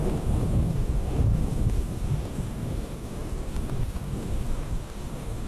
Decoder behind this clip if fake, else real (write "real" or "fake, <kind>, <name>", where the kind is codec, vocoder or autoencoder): fake, codec, DAC